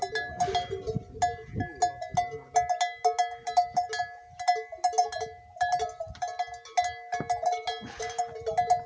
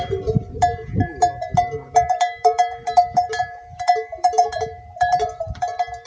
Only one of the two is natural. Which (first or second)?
first